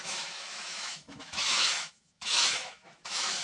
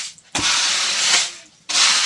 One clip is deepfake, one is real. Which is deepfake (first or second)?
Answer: first